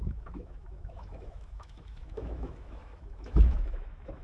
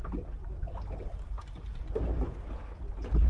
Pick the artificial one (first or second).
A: first